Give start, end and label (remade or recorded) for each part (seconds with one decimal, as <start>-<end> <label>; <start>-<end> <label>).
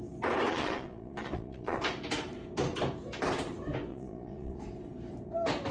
0.0-0.5 recorded; 0.5-1.8 remade; 1.8-3.9 recorded; 3.9-4.6 remade; 4.6-5.7 recorded